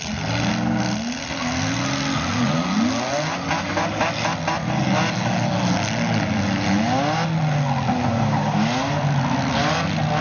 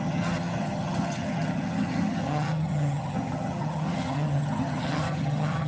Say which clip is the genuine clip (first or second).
first